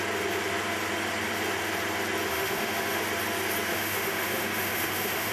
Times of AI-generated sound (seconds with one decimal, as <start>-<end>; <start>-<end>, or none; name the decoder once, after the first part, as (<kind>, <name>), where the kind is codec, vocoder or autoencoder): 2.3-3.0 (autoencoder, DAC-VAE); 3.7-5.3